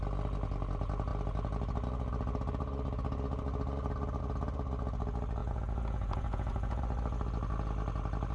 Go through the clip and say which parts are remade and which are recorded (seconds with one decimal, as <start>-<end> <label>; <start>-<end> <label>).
0.0-5.4 recorded; 5.4-6.8 remade; 6.8-8.3 recorded